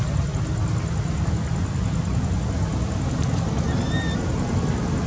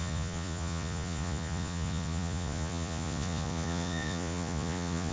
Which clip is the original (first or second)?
first